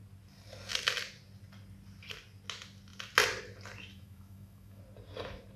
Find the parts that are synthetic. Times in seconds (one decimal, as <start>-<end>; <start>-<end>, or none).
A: 3.9-4.8